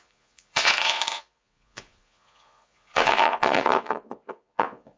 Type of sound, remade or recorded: remade